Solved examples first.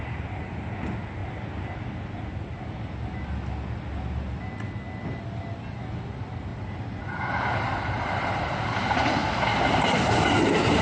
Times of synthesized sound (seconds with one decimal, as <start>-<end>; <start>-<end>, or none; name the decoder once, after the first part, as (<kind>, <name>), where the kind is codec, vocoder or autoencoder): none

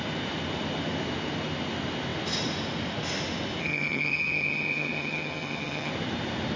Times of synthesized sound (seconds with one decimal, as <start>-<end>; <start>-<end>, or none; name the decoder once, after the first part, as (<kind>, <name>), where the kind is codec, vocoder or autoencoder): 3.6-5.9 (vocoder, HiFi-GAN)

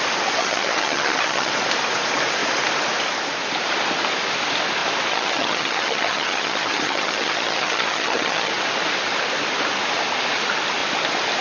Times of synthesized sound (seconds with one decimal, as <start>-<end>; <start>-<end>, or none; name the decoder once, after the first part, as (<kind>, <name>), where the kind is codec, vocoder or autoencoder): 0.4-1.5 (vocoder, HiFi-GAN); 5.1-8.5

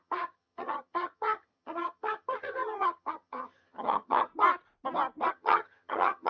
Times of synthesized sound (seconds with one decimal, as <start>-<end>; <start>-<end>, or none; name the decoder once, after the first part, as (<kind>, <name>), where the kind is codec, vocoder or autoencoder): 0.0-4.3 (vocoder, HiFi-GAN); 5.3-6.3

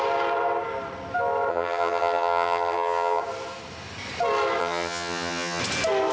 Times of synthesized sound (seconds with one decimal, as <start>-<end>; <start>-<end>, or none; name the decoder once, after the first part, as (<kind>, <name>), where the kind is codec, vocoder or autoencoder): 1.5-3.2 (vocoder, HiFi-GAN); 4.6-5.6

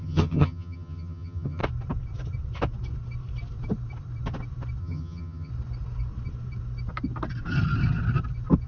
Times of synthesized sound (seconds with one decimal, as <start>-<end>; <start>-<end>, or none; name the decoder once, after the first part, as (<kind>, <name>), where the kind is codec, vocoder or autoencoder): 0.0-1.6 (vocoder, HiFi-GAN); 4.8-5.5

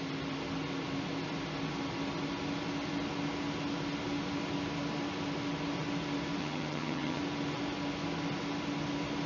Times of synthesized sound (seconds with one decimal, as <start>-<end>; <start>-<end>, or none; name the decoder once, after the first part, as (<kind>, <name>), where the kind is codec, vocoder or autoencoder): 6.4-7.2 (vocoder, HiFi-GAN)